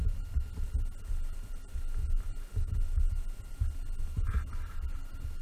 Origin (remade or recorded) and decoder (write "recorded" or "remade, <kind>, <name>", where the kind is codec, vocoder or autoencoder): recorded